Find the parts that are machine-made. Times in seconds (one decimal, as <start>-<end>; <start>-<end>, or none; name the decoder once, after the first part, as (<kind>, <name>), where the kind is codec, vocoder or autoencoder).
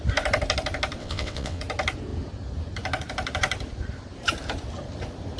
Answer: 1.0-1.6 (vocoder, WaveNeXt)